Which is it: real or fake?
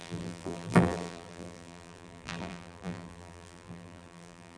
fake